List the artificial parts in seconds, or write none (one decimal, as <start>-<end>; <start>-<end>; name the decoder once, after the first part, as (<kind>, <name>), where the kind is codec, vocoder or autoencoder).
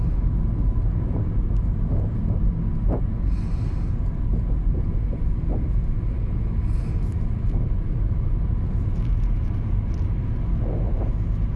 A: none